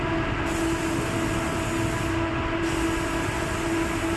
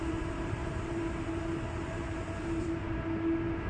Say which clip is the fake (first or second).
second